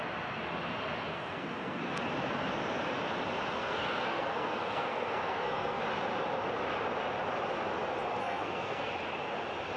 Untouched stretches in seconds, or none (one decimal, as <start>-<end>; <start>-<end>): 0.0-1.1; 2.0-3.6; 5.8-8.2; 8.9-9.8